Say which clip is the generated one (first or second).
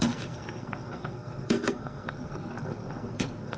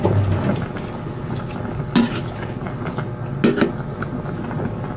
first